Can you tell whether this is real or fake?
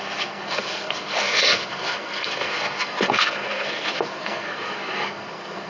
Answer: fake